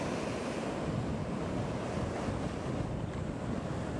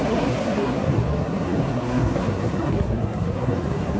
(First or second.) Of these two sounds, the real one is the first